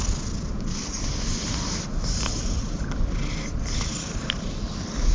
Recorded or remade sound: recorded